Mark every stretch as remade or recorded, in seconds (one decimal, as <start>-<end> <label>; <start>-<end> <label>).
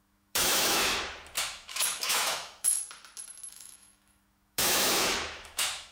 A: 0.0-0.9 remade; 0.9-1.4 recorded; 1.4-2.8 remade; 2.8-3.5 recorded; 3.5-5.9 remade